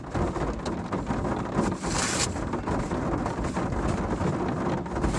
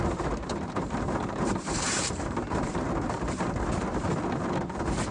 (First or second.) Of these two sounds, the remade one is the second